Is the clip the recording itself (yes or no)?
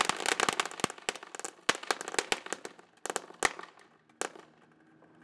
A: yes